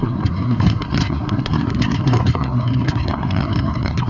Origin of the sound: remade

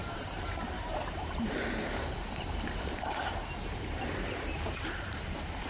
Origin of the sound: remade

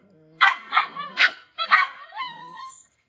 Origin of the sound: remade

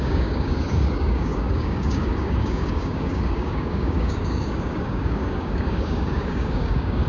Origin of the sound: remade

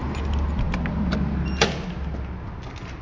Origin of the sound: recorded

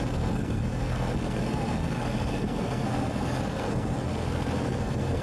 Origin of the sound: remade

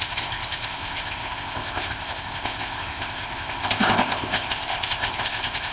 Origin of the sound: remade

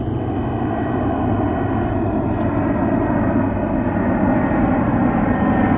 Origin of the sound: recorded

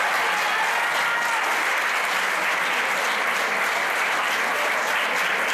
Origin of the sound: recorded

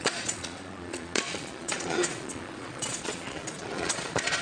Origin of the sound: remade